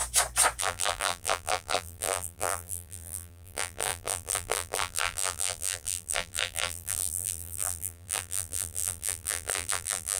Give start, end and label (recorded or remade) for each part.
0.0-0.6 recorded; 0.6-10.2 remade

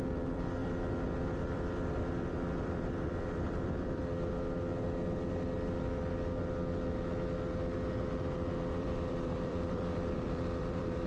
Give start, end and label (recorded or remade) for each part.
0.0-0.6 remade; 0.6-1.3 recorded; 1.3-4.0 remade; 4.0-8.8 recorded; 8.8-11.1 remade

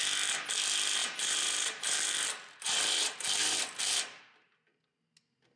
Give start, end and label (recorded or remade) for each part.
0.0-1.0 recorded; 1.0-4.2 remade; 4.2-5.6 recorded

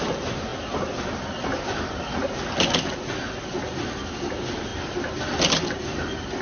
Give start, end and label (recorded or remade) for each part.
0.0-0.5 remade; 0.5-3.8 recorded; 3.8-4.7 remade; 4.7-5.5 recorded; 5.5-6.4 remade